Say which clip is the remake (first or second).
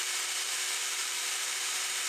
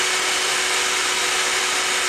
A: first